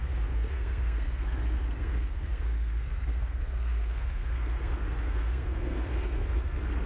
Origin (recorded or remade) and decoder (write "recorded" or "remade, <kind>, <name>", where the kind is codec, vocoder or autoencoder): remade, codec, SNAC